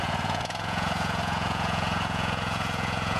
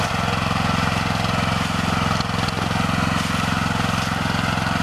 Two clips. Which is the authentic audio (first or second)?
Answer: second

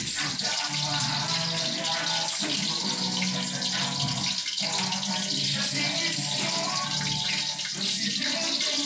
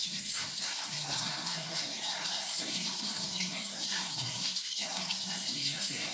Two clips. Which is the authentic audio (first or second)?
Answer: first